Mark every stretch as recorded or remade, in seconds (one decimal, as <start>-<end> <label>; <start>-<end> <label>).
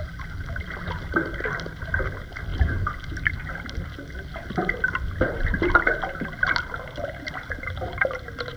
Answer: 0.0-4.3 recorded; 4.3-6.5 remade; 6.5-8.6 recorded